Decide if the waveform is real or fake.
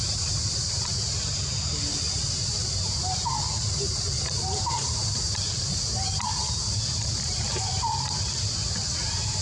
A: real